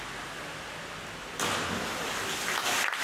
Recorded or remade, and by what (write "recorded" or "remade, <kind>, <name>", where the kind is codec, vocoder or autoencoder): recorded